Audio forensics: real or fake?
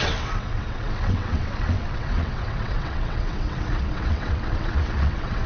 fake